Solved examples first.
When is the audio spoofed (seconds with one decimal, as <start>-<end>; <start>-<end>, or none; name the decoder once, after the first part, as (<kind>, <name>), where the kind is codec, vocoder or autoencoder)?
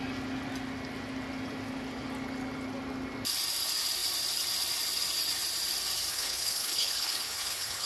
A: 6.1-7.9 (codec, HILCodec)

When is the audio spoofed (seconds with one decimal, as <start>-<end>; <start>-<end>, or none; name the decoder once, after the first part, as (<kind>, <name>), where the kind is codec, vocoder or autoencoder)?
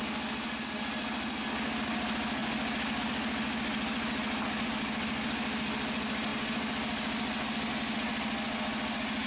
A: none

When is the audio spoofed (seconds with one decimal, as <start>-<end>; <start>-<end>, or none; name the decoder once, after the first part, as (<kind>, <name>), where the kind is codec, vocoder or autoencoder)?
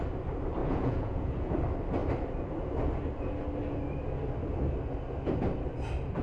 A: 0.6-1.6 (vocoder, Vocos)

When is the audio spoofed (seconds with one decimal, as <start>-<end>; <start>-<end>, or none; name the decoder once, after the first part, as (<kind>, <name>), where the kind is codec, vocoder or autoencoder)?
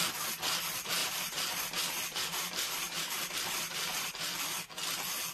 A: 1.0-1.6 (vocoder, BigVGAN v2); 2.1-4.1